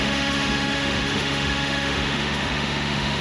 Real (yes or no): no